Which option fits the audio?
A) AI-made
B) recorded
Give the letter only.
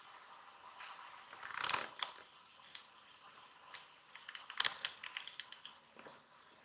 B